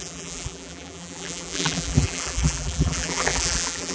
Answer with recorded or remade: remade